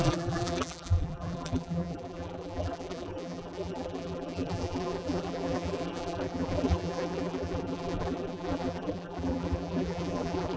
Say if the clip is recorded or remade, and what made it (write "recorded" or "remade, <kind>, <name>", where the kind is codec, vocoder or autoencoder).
remade, vocoder, BigVGAN v2